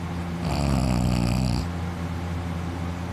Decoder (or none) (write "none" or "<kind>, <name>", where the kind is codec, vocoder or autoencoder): none